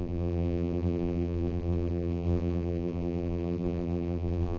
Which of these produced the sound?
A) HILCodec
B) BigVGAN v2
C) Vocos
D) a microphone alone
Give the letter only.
B